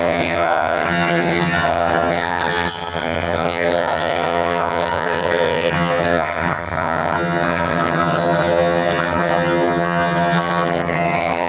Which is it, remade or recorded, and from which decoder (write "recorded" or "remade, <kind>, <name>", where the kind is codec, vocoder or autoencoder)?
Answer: remade, vocoder, HiFi-GAN